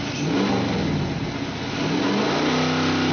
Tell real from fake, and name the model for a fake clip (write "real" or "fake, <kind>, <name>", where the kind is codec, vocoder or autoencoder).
real